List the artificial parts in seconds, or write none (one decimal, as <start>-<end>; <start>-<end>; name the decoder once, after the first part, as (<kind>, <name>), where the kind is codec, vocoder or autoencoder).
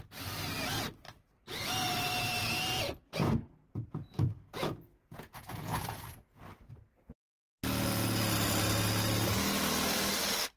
3.2-6.4 (vocoder, Vocos)